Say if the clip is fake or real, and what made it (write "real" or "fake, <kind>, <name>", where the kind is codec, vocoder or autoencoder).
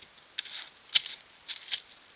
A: real